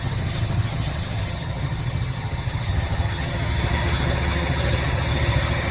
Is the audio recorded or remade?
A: remade